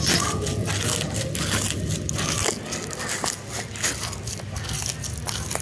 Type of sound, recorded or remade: recorded